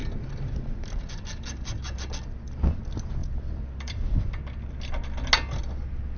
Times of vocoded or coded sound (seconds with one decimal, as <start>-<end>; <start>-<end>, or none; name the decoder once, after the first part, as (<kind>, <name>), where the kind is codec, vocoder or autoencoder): 3.2-4.3 (vocoder, BigVGAN v2)